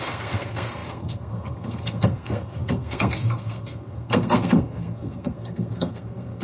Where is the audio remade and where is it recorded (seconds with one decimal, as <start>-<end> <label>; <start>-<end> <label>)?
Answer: 0.0-6.4 remade